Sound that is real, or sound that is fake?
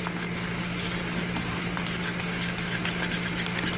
real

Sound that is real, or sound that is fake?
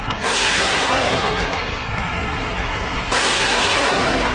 fake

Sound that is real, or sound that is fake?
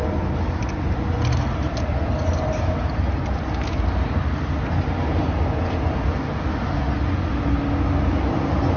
real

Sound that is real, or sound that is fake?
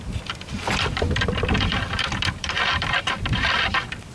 fake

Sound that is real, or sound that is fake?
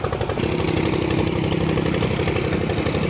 real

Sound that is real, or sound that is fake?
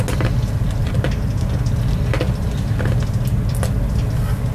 real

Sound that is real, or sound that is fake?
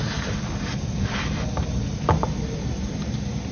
real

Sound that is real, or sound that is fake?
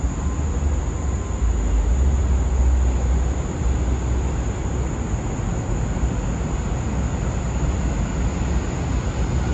real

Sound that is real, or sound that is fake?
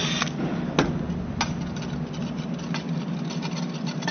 real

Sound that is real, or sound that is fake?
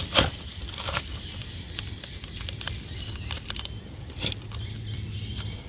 fake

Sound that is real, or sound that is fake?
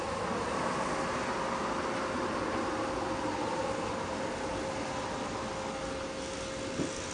real